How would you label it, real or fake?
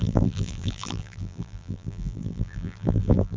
fake